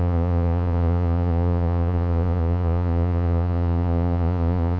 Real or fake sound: fake